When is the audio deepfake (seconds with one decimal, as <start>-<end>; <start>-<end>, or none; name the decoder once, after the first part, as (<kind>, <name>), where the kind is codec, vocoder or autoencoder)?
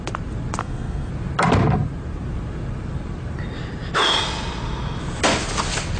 0.6-1.1 (codec, SNAC)